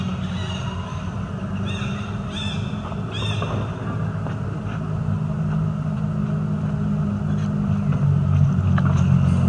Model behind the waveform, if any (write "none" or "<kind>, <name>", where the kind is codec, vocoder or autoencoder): none